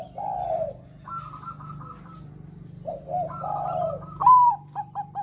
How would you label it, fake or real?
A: real